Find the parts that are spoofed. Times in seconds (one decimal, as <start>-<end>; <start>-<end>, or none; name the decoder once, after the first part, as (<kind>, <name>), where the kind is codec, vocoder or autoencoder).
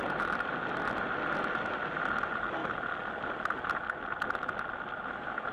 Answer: 2.6-3.6 (vocoder, BigVGAN v2)